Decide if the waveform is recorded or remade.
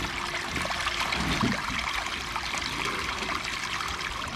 recorded